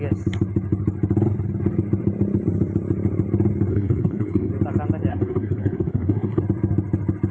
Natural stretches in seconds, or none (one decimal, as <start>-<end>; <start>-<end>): 0.0-3.7; 4.5-5.1; 6.4-7.3